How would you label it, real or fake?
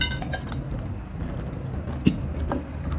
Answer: real